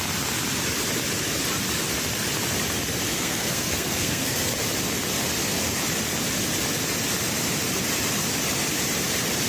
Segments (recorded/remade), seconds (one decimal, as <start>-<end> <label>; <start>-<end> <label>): 0.0-3.1 recorded; 3.1-4.5 remade; 4.5-9.5 recorded